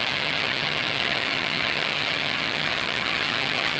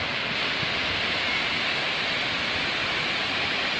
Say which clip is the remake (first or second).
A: first